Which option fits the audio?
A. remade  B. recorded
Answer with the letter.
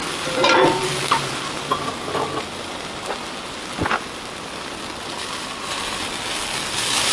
B